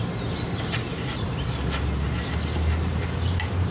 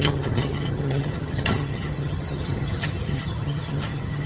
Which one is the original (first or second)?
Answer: first